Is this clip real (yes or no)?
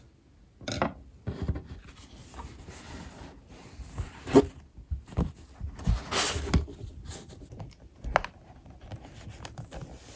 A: yes